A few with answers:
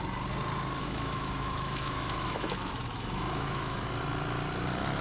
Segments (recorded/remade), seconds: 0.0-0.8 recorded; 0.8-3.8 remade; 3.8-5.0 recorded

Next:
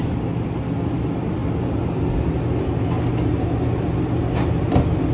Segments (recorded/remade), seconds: 0.0-5.1 recorded